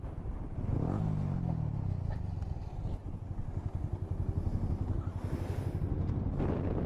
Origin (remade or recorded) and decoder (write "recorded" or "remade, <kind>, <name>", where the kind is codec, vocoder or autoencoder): recorded